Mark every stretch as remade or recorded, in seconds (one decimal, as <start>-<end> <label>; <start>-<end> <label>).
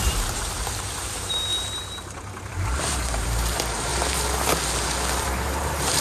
0.0-1.5 remade; 1.5-2.5 recorded; 2.5-3.9 remade; 3.9-5.2 recorded; 5.2-6.0 remade